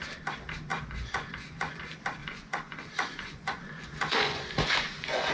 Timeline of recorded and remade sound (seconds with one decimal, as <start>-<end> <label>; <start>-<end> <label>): 0.0-0.7 recorded; 0.7-1.8 remade; 1.8-2.2 recorded; 2.2-5.3 remade